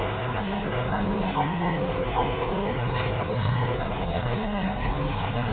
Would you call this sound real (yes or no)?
no